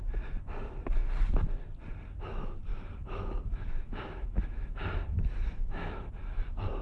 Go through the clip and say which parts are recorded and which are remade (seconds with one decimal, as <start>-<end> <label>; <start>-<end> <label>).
0.0-2.7 recorded; 2.7-6.1 remade; 6.1-6.8 recorded